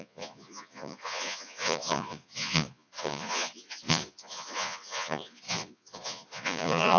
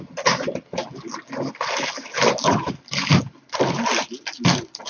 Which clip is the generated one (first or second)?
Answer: first